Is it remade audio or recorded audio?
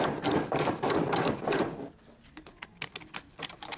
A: recorded